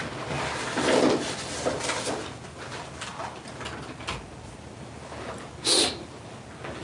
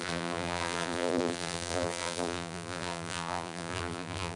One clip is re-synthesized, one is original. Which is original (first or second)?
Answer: first